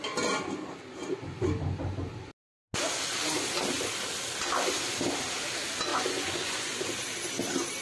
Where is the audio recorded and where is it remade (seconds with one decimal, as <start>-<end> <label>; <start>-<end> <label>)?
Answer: 0.0-5.9 recorded; 5.9-6.8 remade; 6.8-7.8 recorded